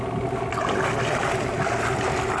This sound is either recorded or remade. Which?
recorded